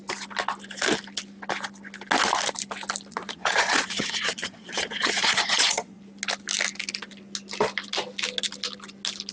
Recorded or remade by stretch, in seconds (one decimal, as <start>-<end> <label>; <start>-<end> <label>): 0.0-3.1 recorded; 3.1-6.0 remade; 6.0-9.3 recorded